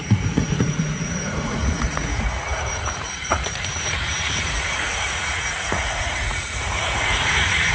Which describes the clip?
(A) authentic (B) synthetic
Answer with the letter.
B